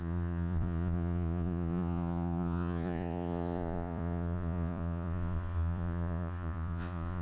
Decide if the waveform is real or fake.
fake